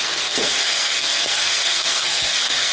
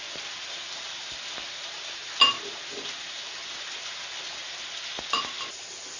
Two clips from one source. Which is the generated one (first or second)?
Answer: first